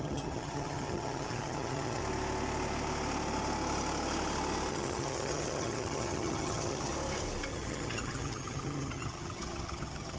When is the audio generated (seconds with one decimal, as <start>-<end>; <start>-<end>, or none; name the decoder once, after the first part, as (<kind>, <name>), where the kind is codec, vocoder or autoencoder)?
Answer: 0.0-2.0 (vocoder, HiFi-GAN); 4.7-6.9; 7.5-10.2